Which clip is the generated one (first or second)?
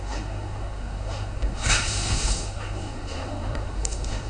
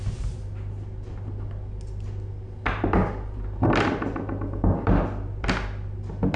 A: first